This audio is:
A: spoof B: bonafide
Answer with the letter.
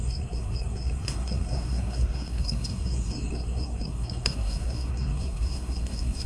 A